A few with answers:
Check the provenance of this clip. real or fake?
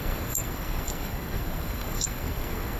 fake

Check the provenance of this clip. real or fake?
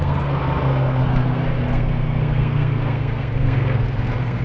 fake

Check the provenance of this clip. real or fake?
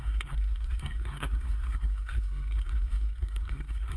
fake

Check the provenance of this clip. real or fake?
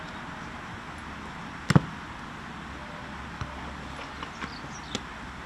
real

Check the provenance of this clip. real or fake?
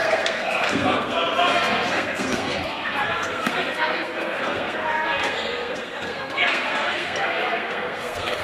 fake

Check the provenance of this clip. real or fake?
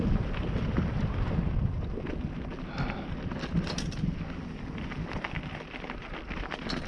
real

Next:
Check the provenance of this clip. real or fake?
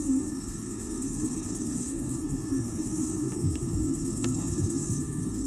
fake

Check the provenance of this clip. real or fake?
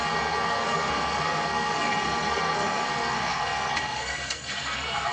fake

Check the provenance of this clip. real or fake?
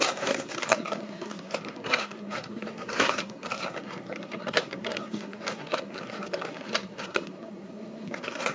fake